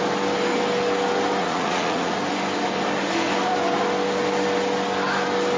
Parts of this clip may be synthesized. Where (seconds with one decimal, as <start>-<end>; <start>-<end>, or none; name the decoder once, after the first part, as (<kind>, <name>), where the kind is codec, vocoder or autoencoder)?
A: 1.4-2.1 (vocoder, Vocos)